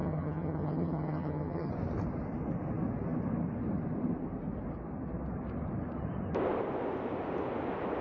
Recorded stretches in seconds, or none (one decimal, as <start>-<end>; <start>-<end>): 1.7-8.0